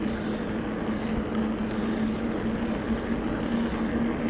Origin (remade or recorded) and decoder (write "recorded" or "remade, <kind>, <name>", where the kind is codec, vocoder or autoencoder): recorded